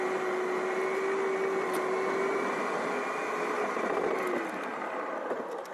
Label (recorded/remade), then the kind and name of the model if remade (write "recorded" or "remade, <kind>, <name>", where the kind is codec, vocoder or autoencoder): recorded